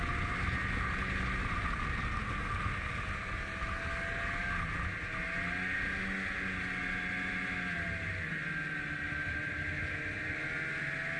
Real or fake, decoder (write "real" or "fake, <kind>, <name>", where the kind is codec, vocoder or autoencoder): real